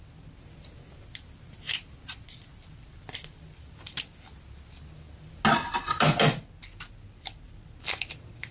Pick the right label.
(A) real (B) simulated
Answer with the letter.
A